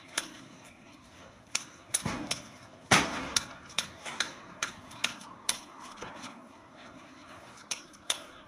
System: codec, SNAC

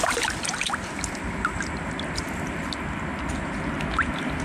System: none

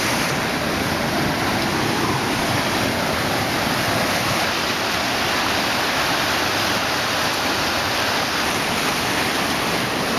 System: vocoder, BigVGAN v2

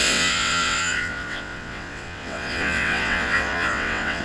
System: vocoder, WaveNeXt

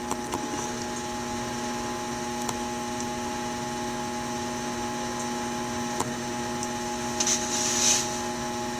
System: none